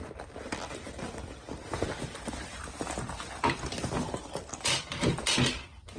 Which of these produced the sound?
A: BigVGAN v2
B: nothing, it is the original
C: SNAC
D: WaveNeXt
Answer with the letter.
A